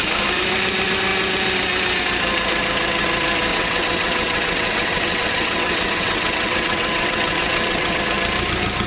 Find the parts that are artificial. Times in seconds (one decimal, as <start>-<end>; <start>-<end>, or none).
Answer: 3.5-8.0

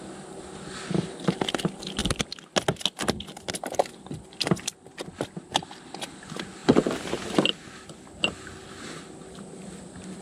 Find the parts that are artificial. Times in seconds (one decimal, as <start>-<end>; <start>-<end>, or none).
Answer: none

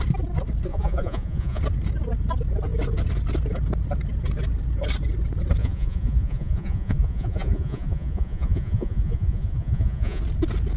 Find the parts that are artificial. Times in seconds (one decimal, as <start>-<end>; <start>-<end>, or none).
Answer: 0.7-1.6; 5.6-10.2

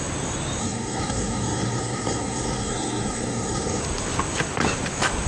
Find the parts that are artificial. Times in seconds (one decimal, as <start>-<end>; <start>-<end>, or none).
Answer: 0.6-3.8

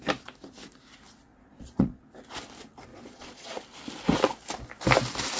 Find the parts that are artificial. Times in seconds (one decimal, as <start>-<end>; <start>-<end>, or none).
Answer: 1.3-2.0; 2.9-3.6